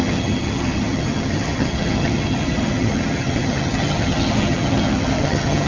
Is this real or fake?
fake